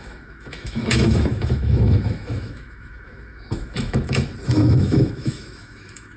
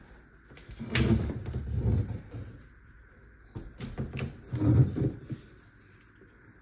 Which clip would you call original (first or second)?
second